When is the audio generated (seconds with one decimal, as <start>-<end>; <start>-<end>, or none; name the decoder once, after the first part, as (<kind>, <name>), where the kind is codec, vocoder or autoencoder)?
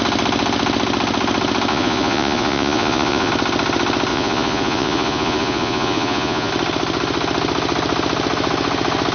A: 1.7-3.3 (vocoder, Vocos); 4.1-6.5